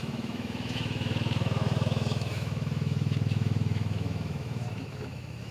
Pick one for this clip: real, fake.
fake